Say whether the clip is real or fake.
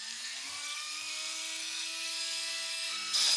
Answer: fake